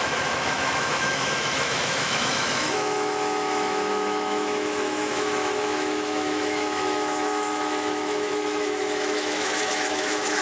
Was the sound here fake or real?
fake